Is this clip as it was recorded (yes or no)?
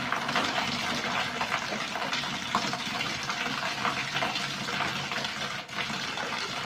yes